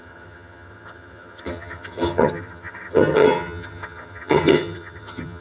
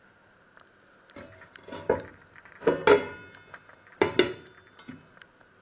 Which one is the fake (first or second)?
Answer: first